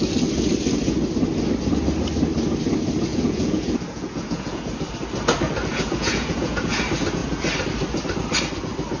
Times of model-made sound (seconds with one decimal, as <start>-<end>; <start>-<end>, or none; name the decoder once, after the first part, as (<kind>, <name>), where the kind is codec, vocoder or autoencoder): 3.1-4.9 (vocoder, Vocos); 5.7-6.8